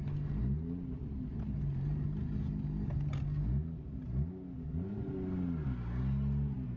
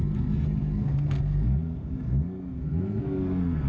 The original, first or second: first